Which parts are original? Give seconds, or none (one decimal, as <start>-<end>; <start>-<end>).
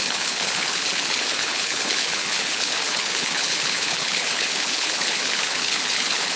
none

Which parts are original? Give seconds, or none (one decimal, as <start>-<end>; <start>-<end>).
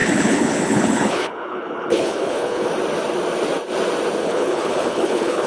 2.7-4.2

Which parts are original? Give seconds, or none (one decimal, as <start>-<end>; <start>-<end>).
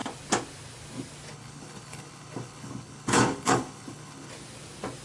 0.0-1.3; 4.3-5.0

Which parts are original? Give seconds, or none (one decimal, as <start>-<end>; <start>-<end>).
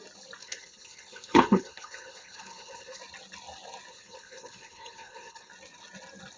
0.0-0.4; 3.0-3.9; 5.5-6.4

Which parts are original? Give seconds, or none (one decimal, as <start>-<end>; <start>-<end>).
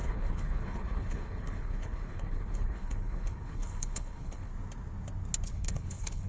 4.5-5.5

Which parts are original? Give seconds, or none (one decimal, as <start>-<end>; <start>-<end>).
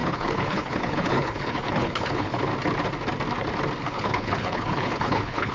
2.5-3.8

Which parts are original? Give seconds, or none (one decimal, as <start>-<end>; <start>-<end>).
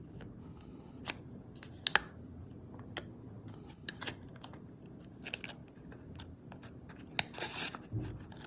0.0-0.4; 1.0-3.5; 4.0-8.5